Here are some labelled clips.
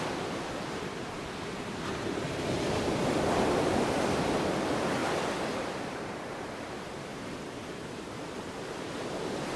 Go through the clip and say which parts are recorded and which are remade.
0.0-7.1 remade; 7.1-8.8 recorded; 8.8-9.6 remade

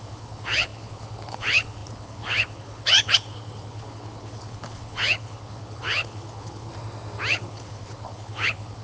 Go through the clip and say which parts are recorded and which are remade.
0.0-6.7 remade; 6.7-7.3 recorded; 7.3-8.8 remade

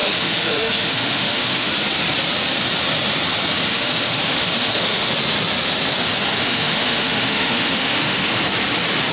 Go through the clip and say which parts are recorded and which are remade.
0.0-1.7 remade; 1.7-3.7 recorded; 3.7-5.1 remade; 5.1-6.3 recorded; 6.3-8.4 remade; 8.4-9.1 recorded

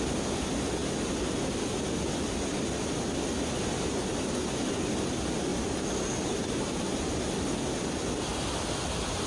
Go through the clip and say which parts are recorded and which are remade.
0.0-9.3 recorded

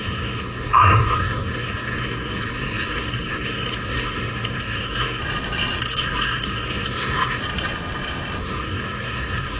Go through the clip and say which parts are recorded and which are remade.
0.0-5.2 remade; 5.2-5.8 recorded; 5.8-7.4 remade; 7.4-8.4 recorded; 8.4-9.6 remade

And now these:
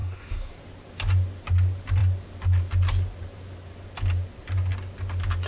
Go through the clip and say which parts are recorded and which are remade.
0.0-0.5 remade; 0.5-5.5 recorded